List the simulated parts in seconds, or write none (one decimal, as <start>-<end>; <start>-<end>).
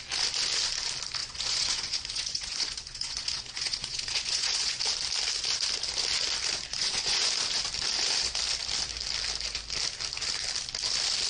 1.2-4.8; 6.7-7.3